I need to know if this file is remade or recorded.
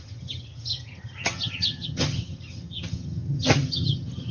remade